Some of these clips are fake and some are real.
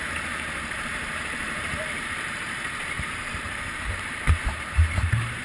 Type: fake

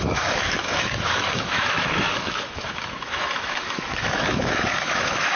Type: fake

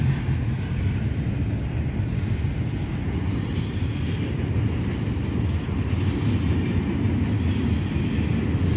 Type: real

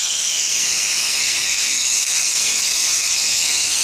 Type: fake